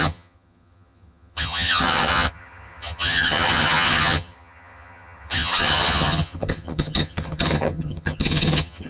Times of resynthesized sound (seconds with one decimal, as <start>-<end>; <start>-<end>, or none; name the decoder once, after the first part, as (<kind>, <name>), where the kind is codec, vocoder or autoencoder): 0.0-8.9 (vocoder, HiFi-GAN)